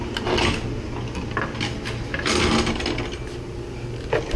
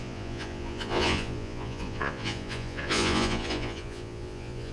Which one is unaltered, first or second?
first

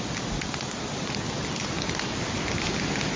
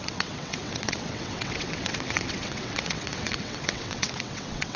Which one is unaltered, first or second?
first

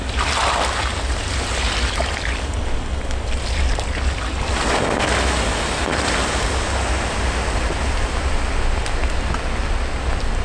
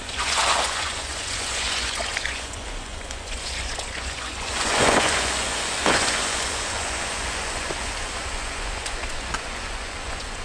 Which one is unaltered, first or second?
first